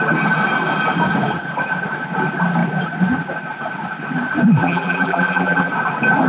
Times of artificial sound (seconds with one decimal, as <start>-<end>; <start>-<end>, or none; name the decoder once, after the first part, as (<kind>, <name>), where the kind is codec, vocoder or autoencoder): 4.6-5.7 (vocoder, BigVGAN v2)